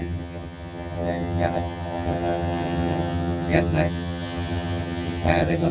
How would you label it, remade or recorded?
remade